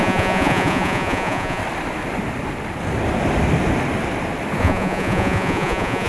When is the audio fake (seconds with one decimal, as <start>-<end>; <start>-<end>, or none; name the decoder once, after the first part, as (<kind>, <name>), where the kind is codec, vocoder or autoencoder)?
0.0-1.6 (vocoder, Vocos); 4.6-6.1